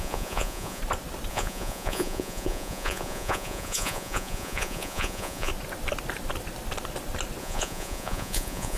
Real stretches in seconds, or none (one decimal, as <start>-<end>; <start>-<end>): 0.8-1.3; 5.5-7.4